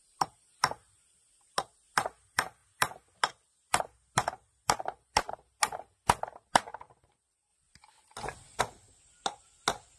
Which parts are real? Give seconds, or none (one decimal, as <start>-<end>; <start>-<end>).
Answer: 0.0-10.0